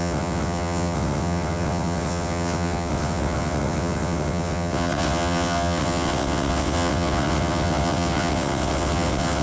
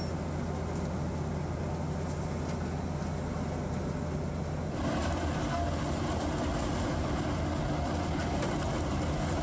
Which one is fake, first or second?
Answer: first